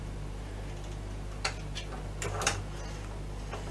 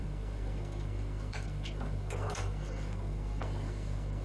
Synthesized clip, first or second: second